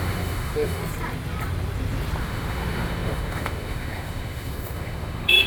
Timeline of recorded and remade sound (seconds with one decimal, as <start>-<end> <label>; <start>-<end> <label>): 0.0-0.8 remade; 0.8-2.2 recorded; 2.2-5.5 remade